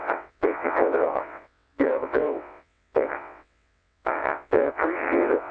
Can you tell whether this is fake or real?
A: fake